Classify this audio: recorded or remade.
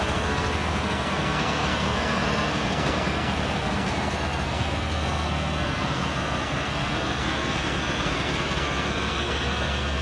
remade